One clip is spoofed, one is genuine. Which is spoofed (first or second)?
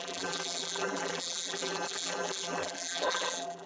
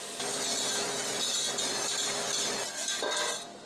first